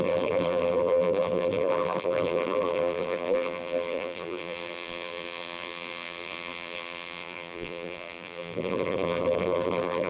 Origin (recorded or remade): remade